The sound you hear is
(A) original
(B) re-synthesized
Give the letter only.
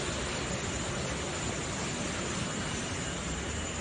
A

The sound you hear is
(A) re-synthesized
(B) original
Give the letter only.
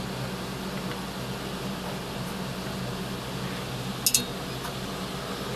B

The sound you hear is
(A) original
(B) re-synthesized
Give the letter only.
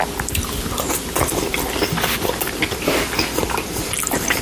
A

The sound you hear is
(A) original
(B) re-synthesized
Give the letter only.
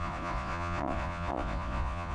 B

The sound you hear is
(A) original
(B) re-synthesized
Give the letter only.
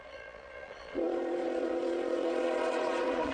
B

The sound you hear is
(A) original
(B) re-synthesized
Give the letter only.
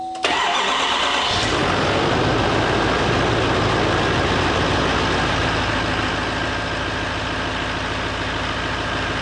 A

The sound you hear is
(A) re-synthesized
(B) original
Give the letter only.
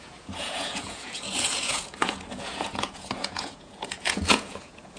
A